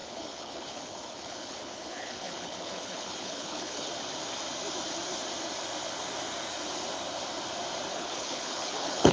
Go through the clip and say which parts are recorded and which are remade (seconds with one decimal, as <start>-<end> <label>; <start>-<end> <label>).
0.0-3.9 remade; 3.9-7.9 recorded; 7.9-9.1 remade